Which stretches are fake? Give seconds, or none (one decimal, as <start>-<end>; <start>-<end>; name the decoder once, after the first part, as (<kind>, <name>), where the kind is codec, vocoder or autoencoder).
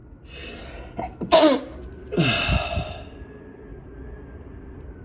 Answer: none